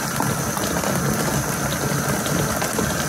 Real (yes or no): yes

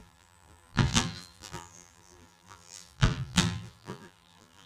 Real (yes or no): no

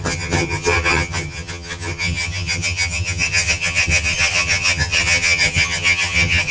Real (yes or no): no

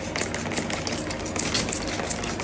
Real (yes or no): yes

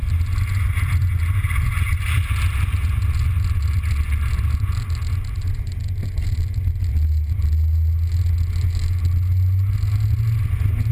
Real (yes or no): yes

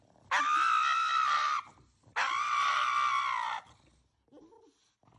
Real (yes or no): yes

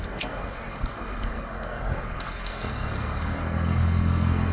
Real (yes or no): no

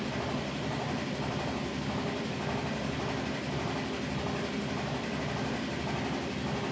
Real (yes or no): yes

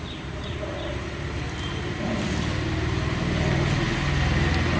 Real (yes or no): yes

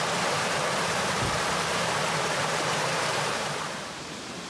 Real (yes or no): no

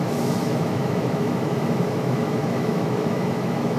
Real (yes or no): no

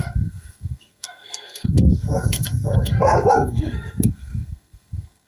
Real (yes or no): no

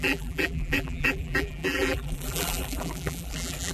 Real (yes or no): no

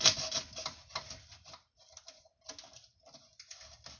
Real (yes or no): yes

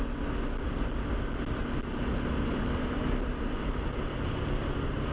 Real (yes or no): yes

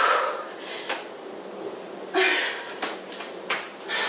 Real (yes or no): yes